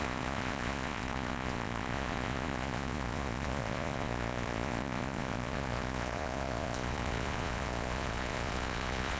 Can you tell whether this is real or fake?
fake